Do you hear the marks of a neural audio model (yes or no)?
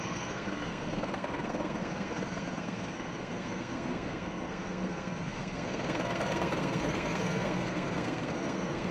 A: yes